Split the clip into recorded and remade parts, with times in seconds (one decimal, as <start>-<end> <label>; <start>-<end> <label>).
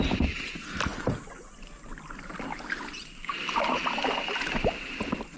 0.0-0.9 remade; 0.9-2.9 recorded; 2.9-3.8 remade; 3.8-5.4 recorded